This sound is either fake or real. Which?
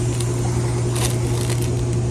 real